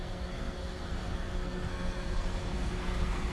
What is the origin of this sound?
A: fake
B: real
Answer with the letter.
A